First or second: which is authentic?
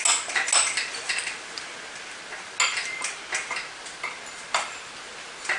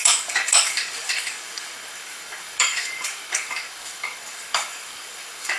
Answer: first